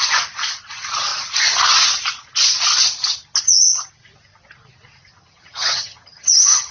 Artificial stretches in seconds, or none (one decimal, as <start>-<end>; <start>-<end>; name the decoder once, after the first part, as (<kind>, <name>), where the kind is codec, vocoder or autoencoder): 5.1-6.7 (vocoder, HiFi-GAN)